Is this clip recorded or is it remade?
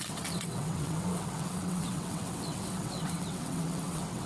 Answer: remade